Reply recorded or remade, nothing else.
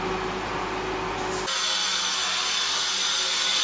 recorded